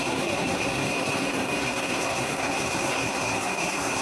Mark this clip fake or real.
fake